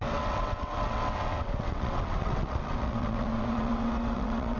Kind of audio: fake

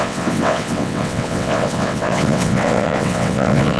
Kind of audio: fake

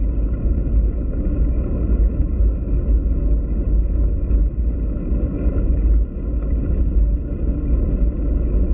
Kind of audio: real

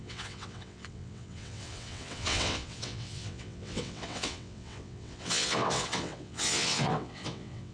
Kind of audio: fake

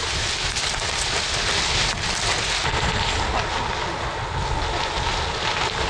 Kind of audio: real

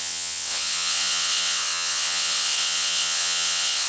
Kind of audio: fake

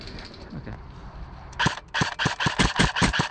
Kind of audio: real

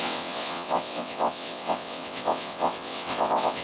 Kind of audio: fake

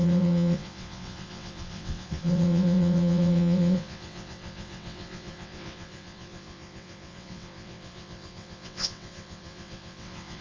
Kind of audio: fake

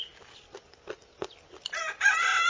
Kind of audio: real